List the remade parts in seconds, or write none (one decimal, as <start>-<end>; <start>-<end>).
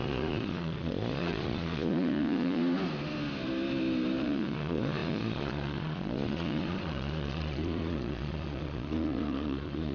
0.0-2.6; 4.2-9.9